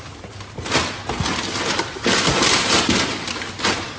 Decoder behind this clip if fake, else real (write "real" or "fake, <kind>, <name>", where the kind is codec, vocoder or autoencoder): real